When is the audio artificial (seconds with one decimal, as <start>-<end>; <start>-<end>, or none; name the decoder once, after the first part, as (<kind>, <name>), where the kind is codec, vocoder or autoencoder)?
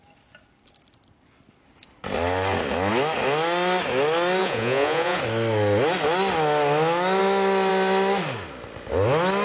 4.4-5.2 (vocoder, Vocos)